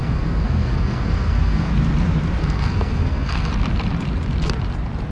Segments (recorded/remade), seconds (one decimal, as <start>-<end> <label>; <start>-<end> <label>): 0.0-1.7 remade; 1.7-2.4 recorded; 2.4-3.5 remade; 3.5-5.1 recorded